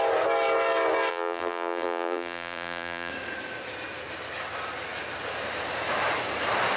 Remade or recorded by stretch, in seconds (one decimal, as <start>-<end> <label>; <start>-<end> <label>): 0.0-1.1 recorded; 1.1-3.1 remade; 3.1-6.8 recorded